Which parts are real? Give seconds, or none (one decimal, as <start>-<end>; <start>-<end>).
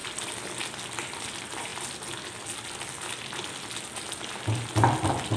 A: 0.0-5.4